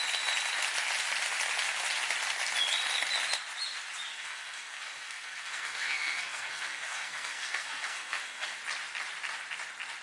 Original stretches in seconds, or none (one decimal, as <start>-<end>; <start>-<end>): 0.0-4.1; 8.6-10.0